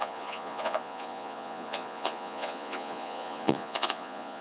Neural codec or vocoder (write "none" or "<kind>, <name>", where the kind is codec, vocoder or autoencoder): vocoder, Vocos